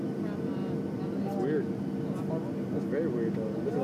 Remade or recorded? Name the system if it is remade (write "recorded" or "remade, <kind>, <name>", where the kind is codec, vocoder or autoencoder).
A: recorded